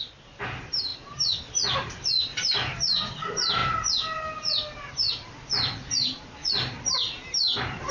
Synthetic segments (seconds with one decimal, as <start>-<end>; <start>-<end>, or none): none